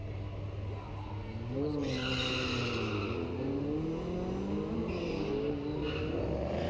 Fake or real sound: real